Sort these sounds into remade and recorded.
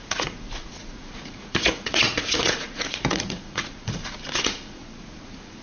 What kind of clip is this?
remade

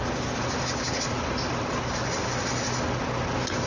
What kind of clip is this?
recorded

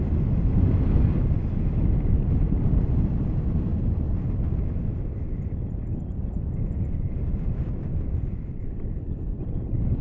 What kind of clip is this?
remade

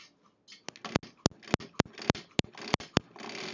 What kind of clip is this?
recorded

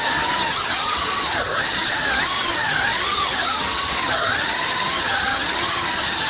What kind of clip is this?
remade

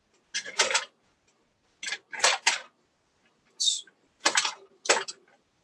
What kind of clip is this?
recorded